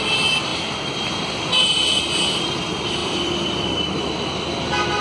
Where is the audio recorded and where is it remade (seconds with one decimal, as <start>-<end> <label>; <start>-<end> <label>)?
0.0-0.5 recorded; 0.5-2.0 remade; 2.0-5.0 recorded